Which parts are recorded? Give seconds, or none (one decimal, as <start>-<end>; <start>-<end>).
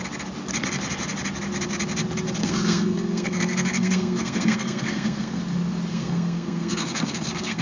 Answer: 0.0-2.4; 5.4-5.9